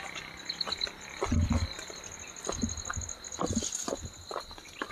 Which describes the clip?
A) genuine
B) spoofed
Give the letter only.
A